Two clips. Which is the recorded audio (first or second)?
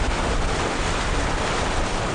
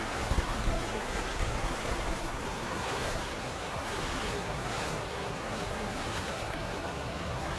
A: first